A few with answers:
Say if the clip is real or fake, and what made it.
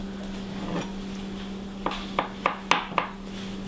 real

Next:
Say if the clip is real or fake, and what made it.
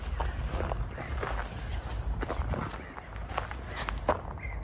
real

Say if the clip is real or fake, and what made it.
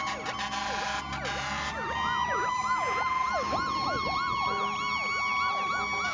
real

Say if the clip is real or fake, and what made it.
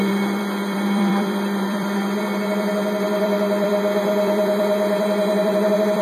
fake, vocoder, BigVGAN v2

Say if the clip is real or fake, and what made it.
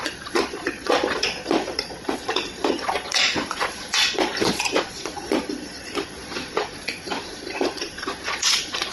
fake, vocoder, Vocos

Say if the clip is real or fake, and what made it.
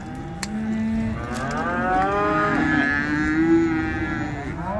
real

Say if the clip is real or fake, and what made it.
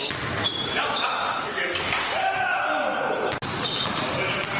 real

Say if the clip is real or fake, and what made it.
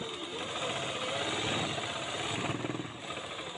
real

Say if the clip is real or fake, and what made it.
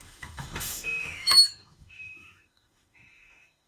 fake, autoencoder, DAC-VAE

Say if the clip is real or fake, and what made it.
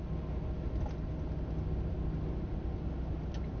real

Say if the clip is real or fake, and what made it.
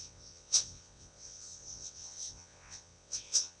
fake, vocoder, WaveNeXt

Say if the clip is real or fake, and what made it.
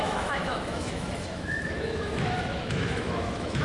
fake, autoencoder, DAC-VAE